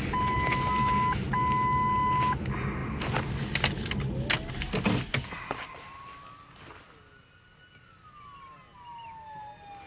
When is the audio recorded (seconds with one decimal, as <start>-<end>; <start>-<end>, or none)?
0.0-9.9